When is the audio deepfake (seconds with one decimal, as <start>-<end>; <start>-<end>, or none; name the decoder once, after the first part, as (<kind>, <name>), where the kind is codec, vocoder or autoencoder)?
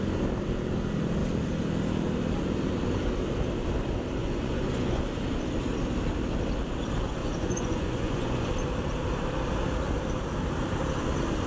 4.2-5.0 (vocoder, Vocos); 7.2-8.5